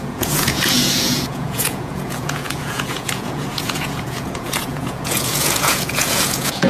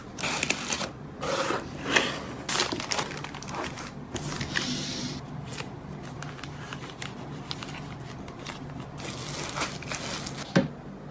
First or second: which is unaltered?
second